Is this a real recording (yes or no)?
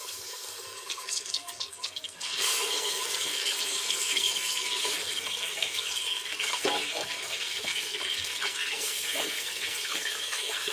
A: no